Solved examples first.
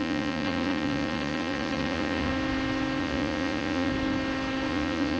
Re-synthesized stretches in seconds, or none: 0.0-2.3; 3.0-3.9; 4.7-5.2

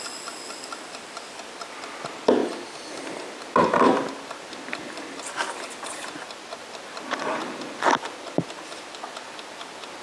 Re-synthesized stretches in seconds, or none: none